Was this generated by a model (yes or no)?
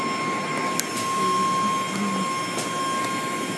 no